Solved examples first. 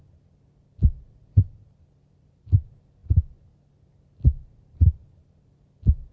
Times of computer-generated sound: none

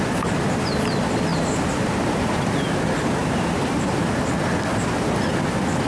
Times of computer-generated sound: 1.3-2.4 (vocoder, BigVGAN v2); 3.2-3.9; 4.7-5.4

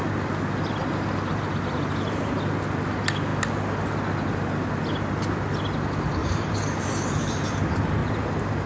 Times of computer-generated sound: 1.3-2.3 (vocoder, BigVGAN v2); 6.2-7.4; 8.0-8.7

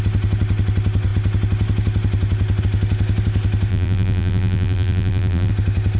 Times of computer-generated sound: 3.7-5.5 (vocoder, BigVGAN v2)

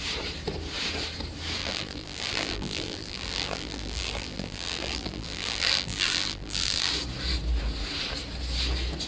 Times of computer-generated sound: 1.6-6.9 (vocoder, BigVGAN v2)

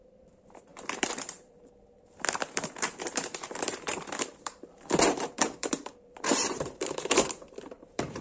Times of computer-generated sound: 0.0-8.2 (vocoder, BigVGAN v2)

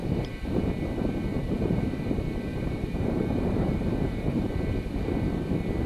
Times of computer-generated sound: 0.0-0.6 (vocoder, BigVGAN v2); 1.3-1.9; 2.5-4.5